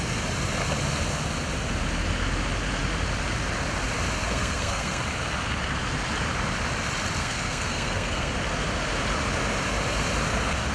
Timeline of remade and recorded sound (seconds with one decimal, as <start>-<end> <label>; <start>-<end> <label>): 0.0-4.2 recorded; 4.2-5.0 remade; 5.0-7.2 recorded; 7.2-8.3 remade; 8.3-10.7 recorded